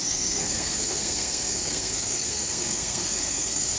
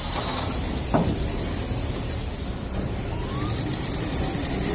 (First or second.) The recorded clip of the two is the second